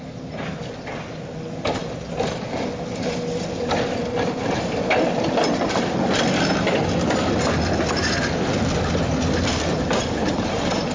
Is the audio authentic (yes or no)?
yes